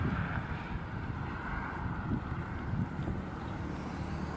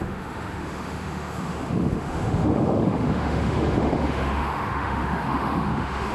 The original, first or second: first